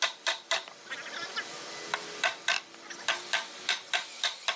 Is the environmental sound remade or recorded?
recorded